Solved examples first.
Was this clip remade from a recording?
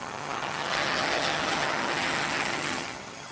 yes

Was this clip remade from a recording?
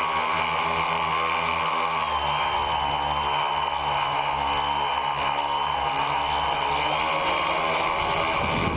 no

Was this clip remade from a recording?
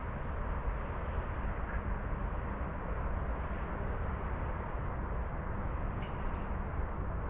no